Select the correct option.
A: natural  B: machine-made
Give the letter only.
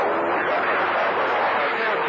A